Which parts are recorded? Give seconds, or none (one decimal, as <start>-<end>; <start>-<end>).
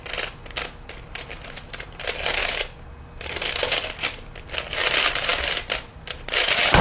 0.0-1.3; 2.0-5.3; 6.2-6.8